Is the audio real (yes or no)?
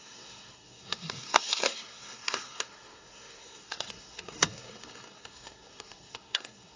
no